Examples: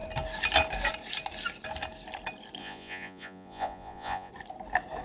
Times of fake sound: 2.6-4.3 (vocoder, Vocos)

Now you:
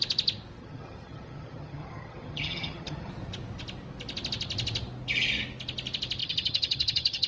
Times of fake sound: 0.6-3.1 (vocoder, HiFi-GAN); 6.2-7.3

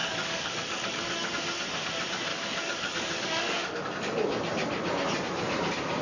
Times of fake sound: 0.0-1.3 (codec, DAC); 2.3-3.8